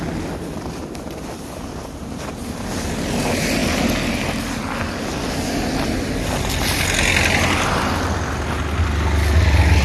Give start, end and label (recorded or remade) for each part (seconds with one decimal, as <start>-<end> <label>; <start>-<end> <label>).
0.0-9.8 recorded